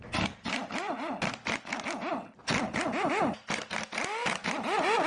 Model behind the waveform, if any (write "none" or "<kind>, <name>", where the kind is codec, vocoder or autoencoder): none